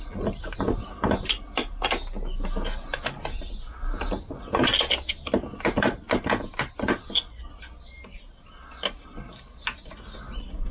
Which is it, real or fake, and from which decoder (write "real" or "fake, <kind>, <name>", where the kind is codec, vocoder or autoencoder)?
real